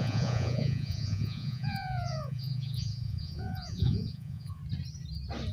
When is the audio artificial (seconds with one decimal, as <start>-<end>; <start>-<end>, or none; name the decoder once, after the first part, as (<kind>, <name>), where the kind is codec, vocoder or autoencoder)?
0.0-4.6 (vocoder, Vocos)